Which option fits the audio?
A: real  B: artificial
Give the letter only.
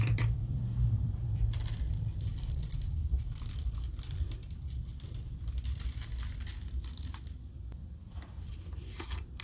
B